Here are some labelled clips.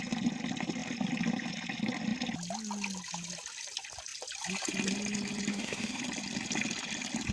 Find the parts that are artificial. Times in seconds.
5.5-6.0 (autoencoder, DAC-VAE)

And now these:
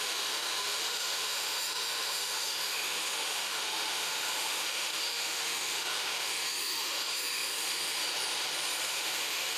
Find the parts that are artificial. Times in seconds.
0.0-8.0 (autoencoder, DAC-VAE); 8.9-9.6

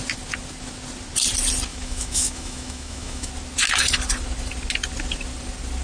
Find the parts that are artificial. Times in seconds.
1.7-3.3 (autoencoder, DAC-VAE)

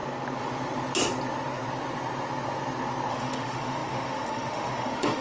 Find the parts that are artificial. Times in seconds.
3.1-5.2 (autoencoder, DAC-VAE)

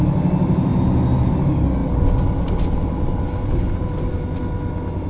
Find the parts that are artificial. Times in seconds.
none

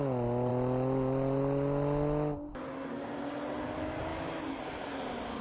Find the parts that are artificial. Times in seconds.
none

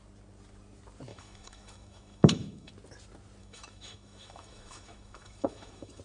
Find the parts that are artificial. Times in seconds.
1.1-2.7 (autoencoder, DAC-VAE); 3.4-6.0